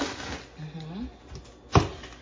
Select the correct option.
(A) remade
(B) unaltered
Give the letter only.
B